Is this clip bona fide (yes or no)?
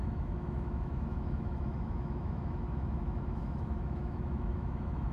no